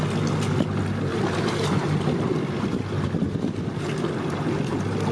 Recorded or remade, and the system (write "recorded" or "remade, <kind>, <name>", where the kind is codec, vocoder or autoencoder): recorded